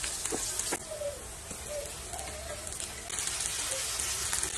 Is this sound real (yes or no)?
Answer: yes